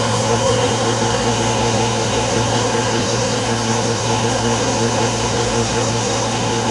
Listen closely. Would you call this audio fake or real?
fake